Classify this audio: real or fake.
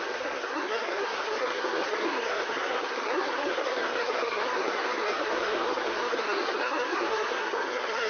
fake